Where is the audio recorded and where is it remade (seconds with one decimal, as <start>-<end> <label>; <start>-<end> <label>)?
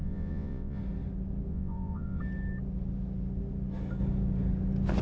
0.0-0.8 remade; 0.8-1.5 recorded; 1.5-2.2 remade; 2.2-5.0 recorded